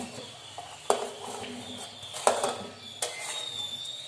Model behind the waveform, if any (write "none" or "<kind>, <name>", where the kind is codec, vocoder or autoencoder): none